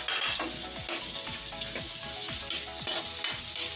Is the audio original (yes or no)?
yes